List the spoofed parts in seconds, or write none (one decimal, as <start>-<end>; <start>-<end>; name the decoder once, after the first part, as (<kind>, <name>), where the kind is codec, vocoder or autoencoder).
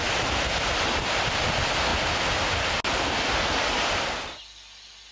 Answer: none